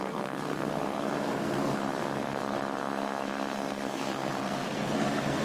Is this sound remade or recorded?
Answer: remade